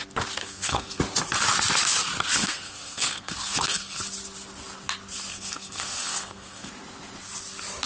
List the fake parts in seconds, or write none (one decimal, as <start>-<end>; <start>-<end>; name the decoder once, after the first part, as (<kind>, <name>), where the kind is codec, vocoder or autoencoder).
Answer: 0.4-1.0 (codec, SNAC); 2.4-4.0; 5.3-6.7